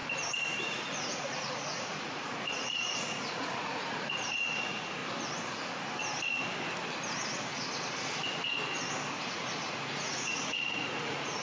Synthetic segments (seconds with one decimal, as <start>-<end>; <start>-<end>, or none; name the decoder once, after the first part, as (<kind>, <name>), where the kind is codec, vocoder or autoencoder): 0.9-5.0 (vocoder, Vocos); 9.1-11.4